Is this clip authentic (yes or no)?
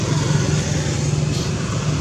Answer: yes